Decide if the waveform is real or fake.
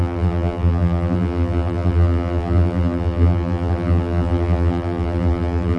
fake